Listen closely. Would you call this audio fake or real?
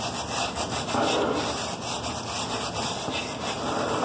real